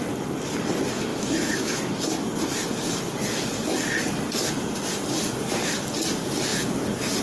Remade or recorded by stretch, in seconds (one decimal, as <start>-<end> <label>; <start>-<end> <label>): 0.0-1.1 recorded; 1.1-1.9 remade; 1.9-7.2 recorded